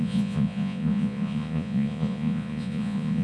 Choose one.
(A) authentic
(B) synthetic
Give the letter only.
B